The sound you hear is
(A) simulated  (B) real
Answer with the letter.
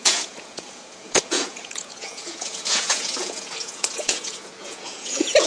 A